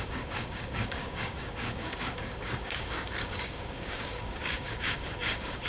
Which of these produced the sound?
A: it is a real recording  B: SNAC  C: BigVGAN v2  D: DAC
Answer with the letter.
D